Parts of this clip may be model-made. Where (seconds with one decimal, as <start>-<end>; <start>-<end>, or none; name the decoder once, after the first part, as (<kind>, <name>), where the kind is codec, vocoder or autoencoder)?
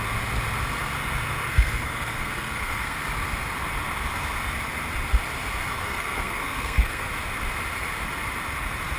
1.5-3.0 (codec, SNAC); 5.7-7.1